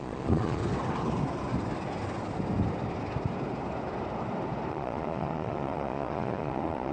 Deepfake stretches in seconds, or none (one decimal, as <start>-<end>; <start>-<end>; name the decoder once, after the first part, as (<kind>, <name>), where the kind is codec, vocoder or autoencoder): 0.0-0.6 (vocoder, Vocos); 4.7-6.9